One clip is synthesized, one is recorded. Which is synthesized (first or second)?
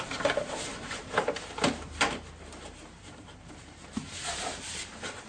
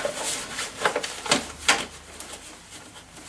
first